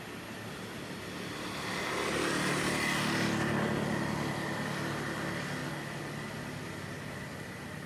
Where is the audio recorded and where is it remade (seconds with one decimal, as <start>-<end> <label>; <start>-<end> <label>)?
0.0-7.9 recorded